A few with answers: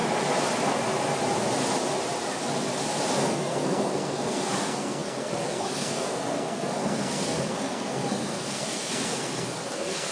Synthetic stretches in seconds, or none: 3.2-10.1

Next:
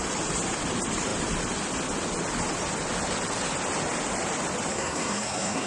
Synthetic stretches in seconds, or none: 4.7-5.7

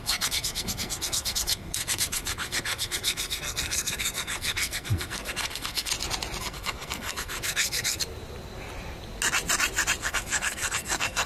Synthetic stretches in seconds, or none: 0.0-5.9; 6.4-8.0; 10.0-11.3

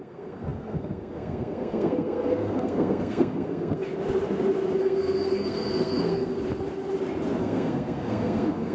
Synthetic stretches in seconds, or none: 0.0-3.9; 4.8-6.3; 7.4-8.7

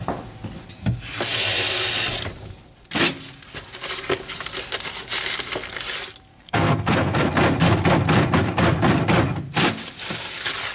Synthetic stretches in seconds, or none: 6.3-7.3

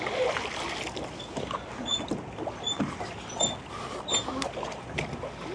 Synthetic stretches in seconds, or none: none